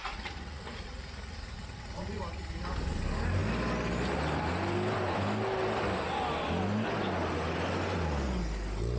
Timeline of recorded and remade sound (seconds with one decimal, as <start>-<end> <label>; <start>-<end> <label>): 0.0-2.2 remade; 2.2-9.0 recorded